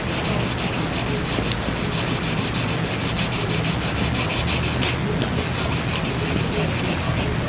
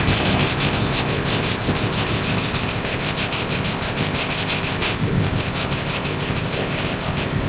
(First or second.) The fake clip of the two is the second